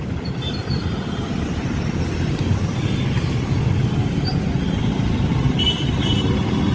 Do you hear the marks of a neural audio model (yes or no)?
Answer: no